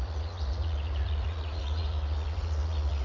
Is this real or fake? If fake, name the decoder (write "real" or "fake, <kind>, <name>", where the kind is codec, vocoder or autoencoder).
fake, vocoder, Vocos